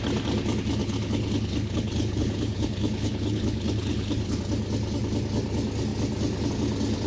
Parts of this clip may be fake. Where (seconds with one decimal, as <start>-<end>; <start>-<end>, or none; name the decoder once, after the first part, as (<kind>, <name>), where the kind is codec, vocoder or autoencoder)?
0.8-4.4 (codec, HILCodec)